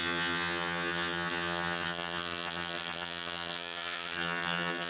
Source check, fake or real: fake